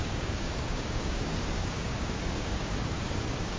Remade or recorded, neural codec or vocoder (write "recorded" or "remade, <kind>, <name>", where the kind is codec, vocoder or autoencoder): remade, codec, DAC